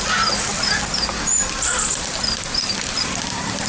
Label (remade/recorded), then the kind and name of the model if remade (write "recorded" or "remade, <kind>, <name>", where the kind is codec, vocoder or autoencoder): recorded